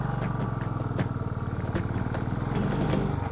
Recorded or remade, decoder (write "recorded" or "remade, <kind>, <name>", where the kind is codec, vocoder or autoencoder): recorded